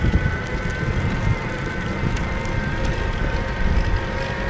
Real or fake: real